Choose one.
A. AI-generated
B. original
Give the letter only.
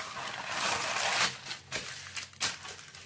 B